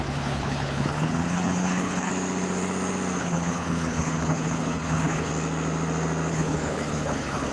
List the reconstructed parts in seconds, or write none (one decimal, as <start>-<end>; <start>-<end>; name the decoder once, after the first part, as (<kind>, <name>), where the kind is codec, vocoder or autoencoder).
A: 0.0-2.1 (codec, HILCodec); 3.2-5.3; 6.3-7.5